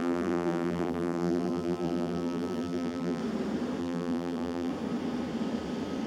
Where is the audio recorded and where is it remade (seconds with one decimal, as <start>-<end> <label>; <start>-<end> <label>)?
0.0-3.2 remade; 3.2-3.8 recorded; 3.8-4.7 remade; 4.7-6.1 recorded